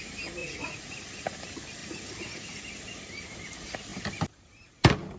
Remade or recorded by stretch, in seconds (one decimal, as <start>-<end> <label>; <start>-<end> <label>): 0.0-0.4 recorded; 0.4-1.1 remade; 1.1-1.8 recorded; 1.8-2.6 remade; 2.6-5.2 recorded